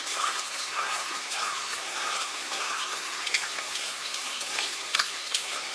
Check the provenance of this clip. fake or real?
fake